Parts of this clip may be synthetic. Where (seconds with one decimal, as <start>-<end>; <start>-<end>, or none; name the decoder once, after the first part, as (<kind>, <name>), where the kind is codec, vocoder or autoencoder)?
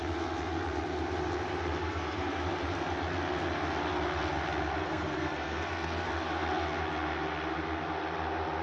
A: 1.8-2.4 (codec, SNAC); 4.8-6.1